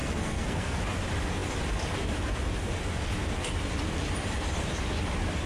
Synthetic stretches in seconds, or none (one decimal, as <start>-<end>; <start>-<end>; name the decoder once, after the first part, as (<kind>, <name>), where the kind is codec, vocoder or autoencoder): 0.0-0.8 (codec, SNAC)